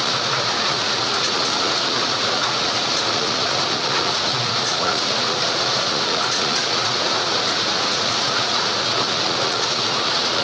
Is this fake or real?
fake